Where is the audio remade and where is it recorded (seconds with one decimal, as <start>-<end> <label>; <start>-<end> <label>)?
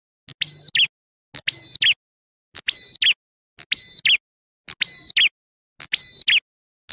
0.0-6.9 recorded